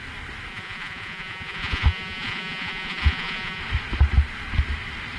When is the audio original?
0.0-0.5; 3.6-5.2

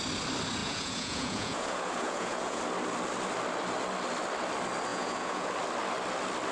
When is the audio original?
0.0-0.6; 2.6-4.9; 5.5-6.5